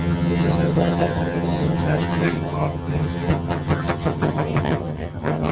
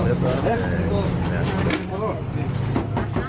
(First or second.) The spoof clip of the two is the first